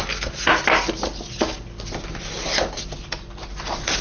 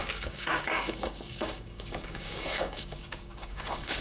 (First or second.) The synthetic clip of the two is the second